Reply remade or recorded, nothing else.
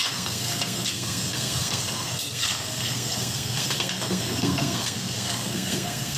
remade